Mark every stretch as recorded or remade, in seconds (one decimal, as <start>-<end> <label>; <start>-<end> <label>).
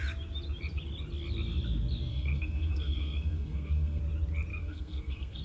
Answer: 0.0-2.1 recorded; 2.1-4.0 remade; 4.0-4.5 recorded; 4.5-5.4 remade